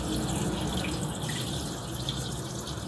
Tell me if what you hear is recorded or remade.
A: recorded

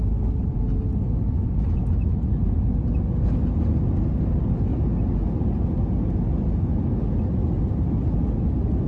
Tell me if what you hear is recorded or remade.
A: recorded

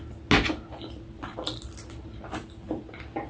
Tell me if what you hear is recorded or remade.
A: recorded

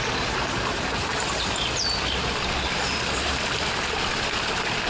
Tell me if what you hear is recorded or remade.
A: recorded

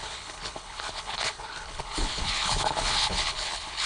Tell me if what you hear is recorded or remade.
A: remade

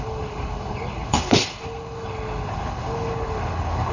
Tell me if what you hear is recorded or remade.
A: remade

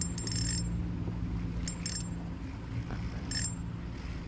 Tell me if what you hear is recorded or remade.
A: recorded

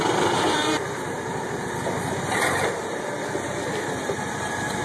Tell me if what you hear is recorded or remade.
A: recorded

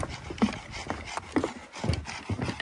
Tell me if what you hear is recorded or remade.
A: recorded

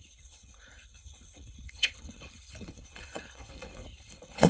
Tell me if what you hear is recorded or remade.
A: remade